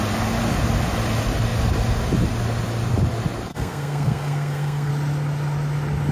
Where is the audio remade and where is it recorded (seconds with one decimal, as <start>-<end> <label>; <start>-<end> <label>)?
0.0-3.5 recorded; 3.5-4.9 remade; 4.9-6.1 recorded